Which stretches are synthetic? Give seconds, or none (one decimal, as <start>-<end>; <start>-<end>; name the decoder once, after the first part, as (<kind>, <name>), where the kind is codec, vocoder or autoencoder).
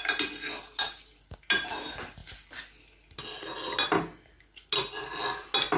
none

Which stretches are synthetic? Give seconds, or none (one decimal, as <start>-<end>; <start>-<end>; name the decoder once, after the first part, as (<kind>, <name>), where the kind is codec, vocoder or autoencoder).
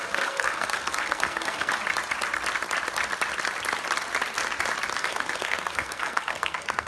0.0-1.7 (codec, SNAC); 5.0-6.9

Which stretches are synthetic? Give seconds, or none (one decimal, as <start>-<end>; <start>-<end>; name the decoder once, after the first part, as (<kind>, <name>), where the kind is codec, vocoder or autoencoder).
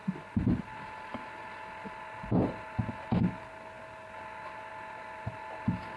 none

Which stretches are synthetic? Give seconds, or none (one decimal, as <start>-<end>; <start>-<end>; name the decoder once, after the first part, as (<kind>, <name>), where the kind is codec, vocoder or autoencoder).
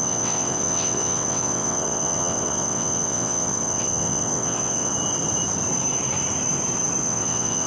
0.0-4.9 (vocoder, WaveNeXt); 7.0-7.7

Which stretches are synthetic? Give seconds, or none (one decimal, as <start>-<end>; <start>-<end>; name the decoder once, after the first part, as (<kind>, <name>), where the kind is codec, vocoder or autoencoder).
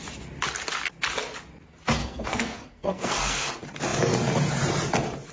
2.0-3.5 (codec, SNAC)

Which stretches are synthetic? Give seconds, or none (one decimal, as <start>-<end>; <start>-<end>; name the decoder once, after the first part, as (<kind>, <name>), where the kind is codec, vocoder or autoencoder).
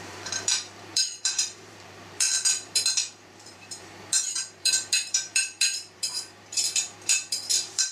0.0-7.9 (vocoder, BigVGAN v2)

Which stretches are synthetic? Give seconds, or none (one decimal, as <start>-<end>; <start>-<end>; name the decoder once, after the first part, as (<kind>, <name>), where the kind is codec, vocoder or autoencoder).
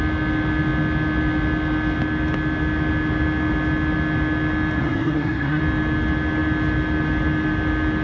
4.8-5.6 (codec, SNAC)